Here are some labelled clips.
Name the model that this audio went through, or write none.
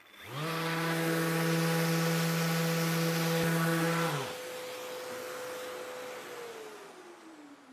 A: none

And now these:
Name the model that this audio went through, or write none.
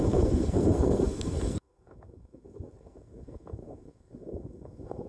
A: codec, SNAC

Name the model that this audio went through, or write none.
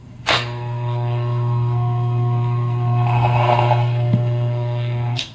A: codec, SNAC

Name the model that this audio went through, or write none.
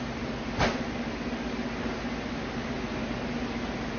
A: none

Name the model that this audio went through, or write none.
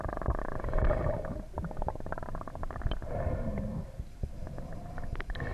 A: none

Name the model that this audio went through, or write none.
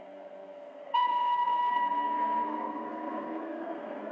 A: codec, SNAC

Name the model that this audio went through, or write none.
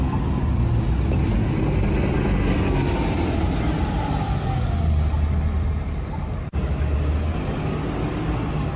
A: none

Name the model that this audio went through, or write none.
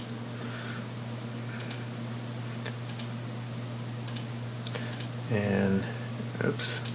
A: none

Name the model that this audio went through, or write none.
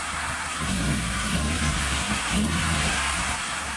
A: codec, SNAC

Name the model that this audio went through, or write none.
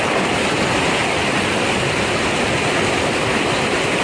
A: none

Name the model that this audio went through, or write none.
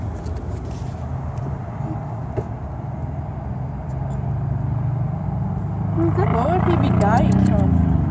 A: none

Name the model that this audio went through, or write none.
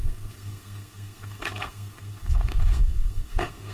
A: codec, SNAC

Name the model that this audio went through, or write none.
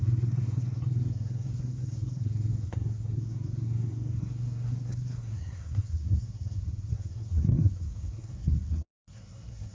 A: codec, SNAC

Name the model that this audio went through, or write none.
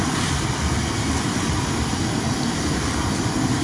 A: none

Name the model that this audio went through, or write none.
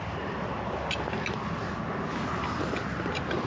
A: none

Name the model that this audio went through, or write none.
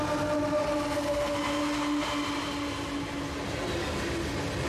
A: none